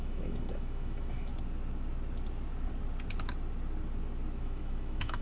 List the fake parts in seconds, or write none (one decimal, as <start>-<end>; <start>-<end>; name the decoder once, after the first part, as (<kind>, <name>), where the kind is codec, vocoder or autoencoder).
0.0-1.3 (autoencoder, DAC-VAE); 4.4-5.2